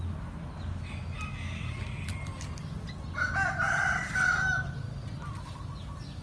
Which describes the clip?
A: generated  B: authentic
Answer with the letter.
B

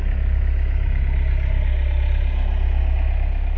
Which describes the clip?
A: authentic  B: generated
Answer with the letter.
A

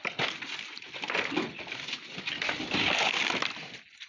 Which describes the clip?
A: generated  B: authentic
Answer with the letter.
B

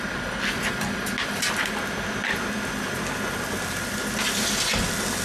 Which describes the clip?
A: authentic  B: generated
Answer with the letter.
A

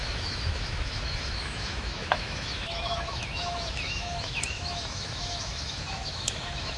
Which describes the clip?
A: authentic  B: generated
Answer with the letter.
B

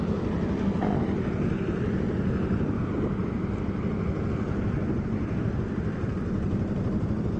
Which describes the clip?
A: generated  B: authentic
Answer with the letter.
B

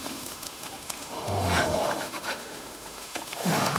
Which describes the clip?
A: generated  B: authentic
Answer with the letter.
A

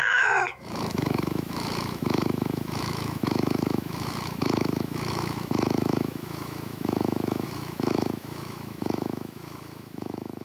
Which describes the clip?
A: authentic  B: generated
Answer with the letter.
B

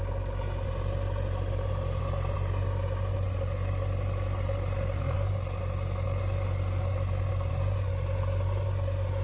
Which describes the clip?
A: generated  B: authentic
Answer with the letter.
B